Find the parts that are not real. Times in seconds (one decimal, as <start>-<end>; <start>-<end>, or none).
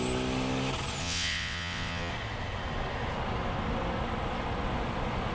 1.0-2.1